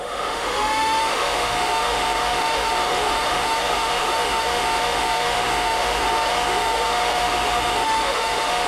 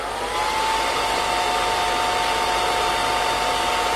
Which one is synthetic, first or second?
first